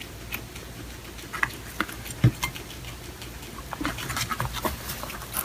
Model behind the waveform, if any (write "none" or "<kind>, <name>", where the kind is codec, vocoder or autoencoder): none